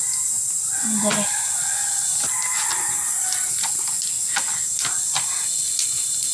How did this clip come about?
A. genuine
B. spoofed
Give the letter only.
A